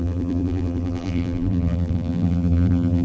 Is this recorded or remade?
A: remade